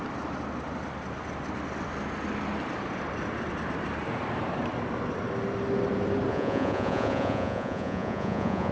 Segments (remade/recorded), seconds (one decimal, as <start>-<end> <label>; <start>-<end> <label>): 0.0-6.3 recorded; 6.3-8.7 remade